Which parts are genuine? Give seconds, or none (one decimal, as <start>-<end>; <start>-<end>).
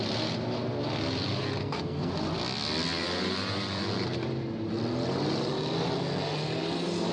0.0-1.6; 2.1-7.1